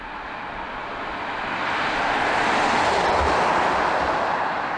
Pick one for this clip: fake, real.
real